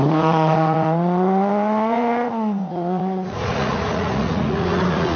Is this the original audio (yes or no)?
no